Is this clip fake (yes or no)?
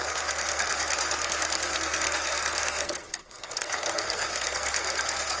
yes